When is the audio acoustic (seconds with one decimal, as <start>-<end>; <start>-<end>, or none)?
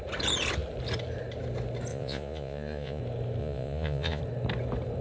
0.0-1.9; 3.0-3.4; 4.2-5.0